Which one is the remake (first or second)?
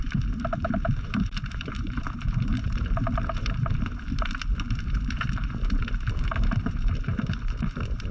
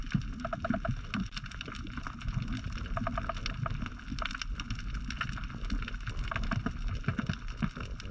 first